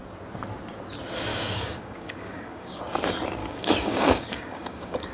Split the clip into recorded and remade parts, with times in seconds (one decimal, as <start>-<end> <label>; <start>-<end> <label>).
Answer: 0.0-1.3 recorded; 1.3-2.8 remade; 2.8-3.4 recorded; 3.4-5.1 remade